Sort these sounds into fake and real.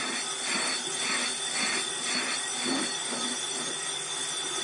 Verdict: real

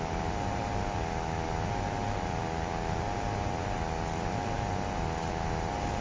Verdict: real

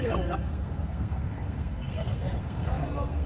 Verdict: fake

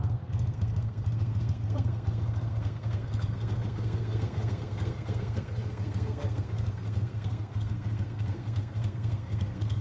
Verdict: fake